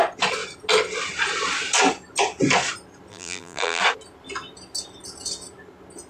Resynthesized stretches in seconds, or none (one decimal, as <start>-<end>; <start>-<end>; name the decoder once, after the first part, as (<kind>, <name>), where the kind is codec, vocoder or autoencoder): 3.1-3.8 (vocoder, BigVGAN v2)